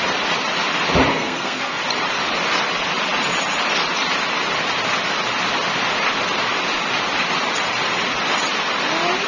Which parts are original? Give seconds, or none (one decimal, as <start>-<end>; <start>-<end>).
0.0-1.1; 1.8-9.3